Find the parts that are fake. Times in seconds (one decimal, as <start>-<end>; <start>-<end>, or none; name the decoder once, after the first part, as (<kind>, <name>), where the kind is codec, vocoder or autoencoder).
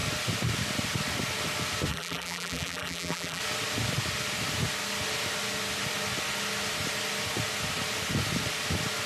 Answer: 1.9-3.4 (vocoder, BigVGAN v2)